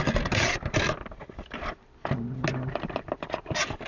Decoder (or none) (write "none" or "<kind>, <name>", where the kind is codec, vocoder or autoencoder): none